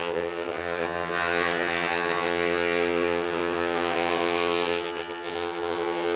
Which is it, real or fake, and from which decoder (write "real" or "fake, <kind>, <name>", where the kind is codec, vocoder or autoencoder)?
fake, vocoder, HiFi-GAN